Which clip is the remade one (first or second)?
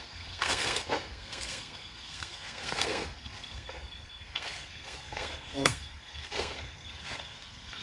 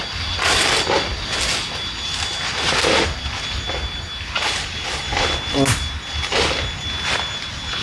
first